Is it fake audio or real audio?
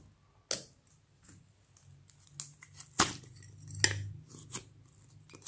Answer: real